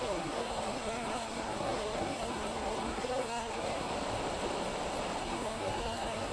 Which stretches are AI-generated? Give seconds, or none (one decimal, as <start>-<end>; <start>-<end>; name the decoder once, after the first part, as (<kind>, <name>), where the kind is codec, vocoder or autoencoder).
0.0-3.9 (codec, SNAC); 5.2-6.3